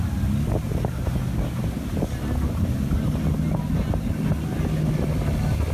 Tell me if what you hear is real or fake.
real